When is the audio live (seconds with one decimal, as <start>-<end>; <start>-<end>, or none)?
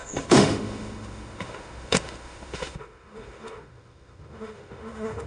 none